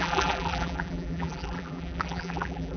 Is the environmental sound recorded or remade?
remade